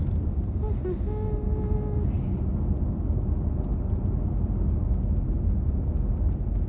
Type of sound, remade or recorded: recorded